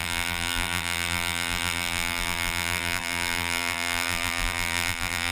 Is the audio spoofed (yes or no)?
yes